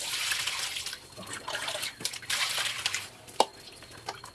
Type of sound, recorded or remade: recorded